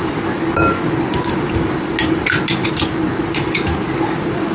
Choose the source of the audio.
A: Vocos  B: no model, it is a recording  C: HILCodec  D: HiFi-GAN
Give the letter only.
B